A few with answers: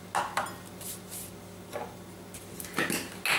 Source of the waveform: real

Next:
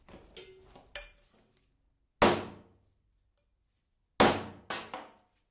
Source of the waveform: real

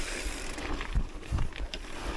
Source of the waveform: fake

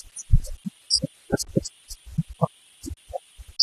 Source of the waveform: real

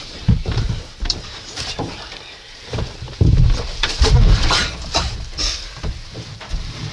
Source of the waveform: fake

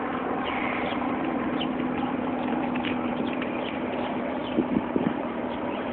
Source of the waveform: fake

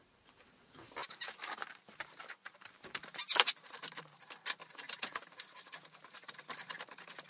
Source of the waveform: fake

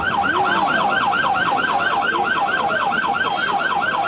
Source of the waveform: real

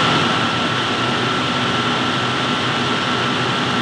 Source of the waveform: real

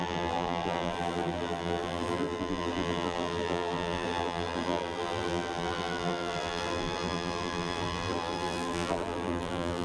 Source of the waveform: fake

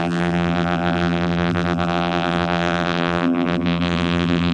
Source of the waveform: fake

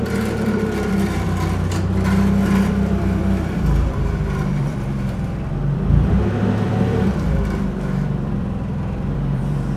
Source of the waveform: fake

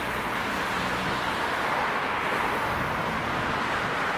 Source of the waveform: real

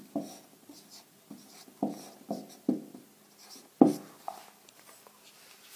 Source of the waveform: real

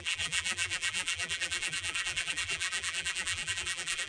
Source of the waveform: fake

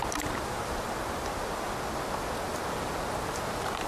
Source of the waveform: real